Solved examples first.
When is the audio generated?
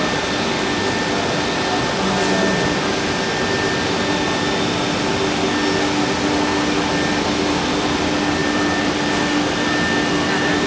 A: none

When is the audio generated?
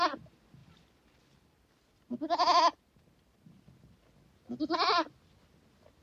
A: none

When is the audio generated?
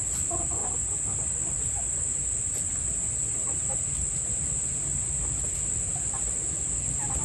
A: none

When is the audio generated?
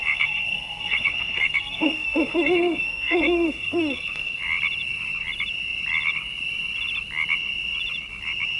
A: 0.0-4.4 (codec, SNAC)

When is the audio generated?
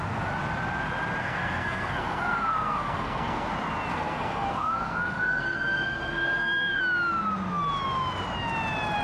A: 1.2-3.5 (codec, SNAC); 3.9-6.8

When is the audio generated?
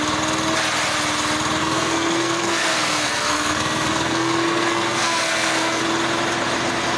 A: 1.6-5.8 (codec, SNAC)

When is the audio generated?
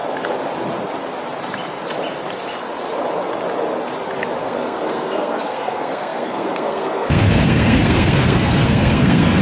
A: 4.4-9.4 (codec, SNAC)